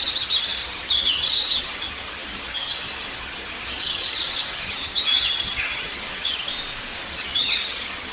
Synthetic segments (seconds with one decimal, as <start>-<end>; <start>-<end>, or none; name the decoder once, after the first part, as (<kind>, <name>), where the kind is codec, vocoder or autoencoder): 0.0-6.5 (vocoder, HiFi-GAN); 7.0-8.1